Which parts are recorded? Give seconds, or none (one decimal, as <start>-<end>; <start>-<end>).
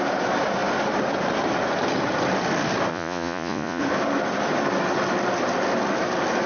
0.0-2.9; 3.8-6.5